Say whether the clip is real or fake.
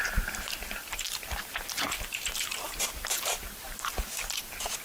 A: fake